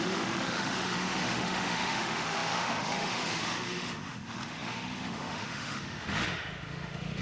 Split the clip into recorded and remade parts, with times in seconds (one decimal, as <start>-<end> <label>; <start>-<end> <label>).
0.0-7.2 remade